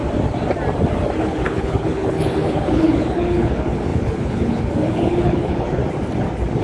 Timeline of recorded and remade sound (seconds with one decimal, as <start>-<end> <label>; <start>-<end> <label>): 0.0-1.2 recorded; 1.2-5.8 remade; 5.8-6.6 recorded